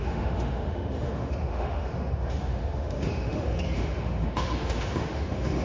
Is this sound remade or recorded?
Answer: remade